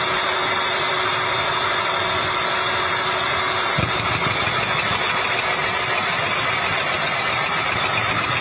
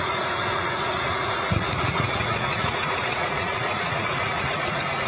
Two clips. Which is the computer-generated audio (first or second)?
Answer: second